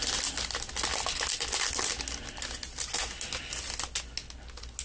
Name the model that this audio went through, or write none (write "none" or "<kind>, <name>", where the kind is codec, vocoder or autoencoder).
none